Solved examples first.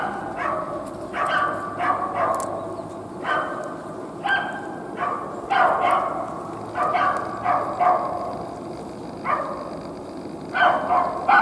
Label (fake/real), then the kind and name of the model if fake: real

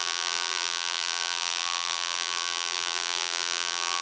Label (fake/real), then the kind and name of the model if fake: fake, vocoder, BigVGAN v2